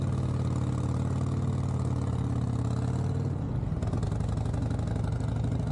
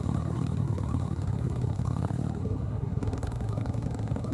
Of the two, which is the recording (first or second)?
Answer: first